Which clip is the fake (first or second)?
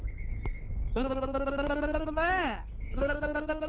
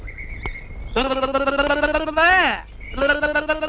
first